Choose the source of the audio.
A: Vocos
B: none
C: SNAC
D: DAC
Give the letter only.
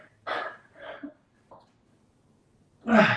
B